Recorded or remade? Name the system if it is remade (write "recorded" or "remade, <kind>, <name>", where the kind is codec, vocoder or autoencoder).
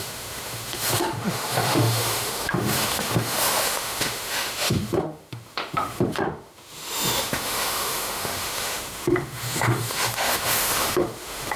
remade, autoencoder, DAC-VAE